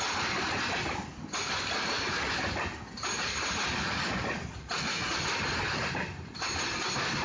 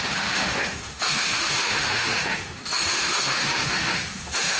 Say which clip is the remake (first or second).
second